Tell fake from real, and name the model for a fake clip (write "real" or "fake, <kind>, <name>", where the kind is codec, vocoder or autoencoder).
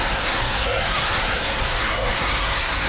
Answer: fake, codec, SNAC